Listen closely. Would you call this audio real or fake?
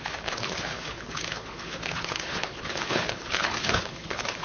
fake